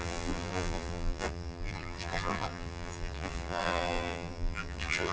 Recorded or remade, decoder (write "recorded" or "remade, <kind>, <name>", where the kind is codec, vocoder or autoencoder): remade, vocoder, BigVGAN v2